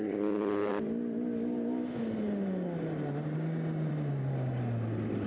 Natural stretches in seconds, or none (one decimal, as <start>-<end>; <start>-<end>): 0.0-5.3